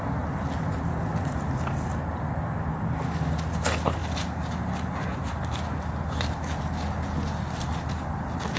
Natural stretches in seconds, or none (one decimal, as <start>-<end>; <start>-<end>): 0.0-8.6